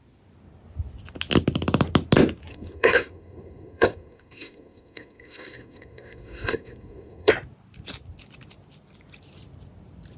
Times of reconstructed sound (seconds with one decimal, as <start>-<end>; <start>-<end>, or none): 2.5-7.3